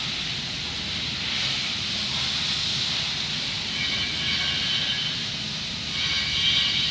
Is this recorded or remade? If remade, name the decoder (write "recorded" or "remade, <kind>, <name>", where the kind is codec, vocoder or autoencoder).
recorded